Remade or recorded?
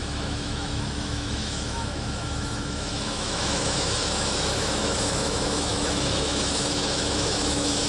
remade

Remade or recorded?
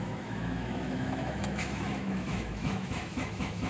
remade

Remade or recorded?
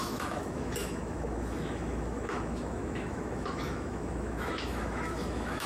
remade